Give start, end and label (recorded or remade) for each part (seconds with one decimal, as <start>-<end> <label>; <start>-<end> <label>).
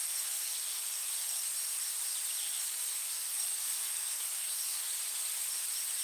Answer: 0.0-1.4 remade; 1.4-2.4 recorded; 2.4-4.8 remade; 4.8-6.0 recorded